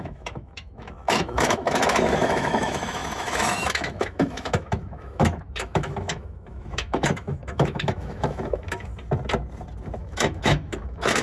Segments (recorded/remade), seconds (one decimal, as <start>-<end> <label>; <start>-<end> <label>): 0.0-8.9 remade; 8.9-10.0 recorded; 10.0-11.2 remade